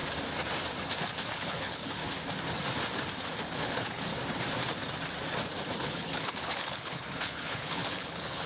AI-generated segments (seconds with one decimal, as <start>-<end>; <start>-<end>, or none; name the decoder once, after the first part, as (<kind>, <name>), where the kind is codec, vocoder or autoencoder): 1.0-2.0 (codec, HILCodec); 3.6-4.1; 5.8-8.5